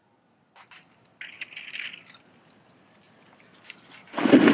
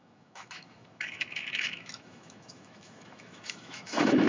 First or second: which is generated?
second